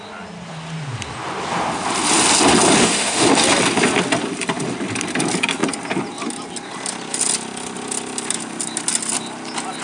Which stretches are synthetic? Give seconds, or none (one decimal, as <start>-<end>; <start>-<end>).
2.8-3.3